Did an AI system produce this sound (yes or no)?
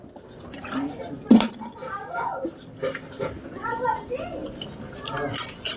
no